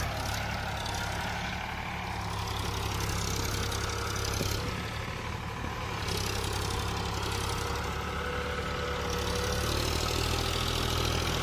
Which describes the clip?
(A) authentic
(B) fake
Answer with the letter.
A